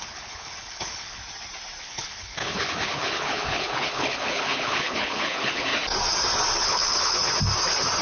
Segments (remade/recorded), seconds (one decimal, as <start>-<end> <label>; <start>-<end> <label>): 0.0-1.2 remade; 1.2-1.8 recorded; 1.8-5.7 remade; 5.7-6.6 recorded; 6.6-7.2 remade; 7.2-8.0 recorded